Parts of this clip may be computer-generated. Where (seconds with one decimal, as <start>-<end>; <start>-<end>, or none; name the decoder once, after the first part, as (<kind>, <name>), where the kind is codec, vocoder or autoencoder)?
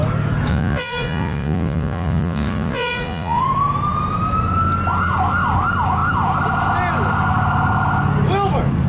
0.5-3.4 (vocoder, Vocos)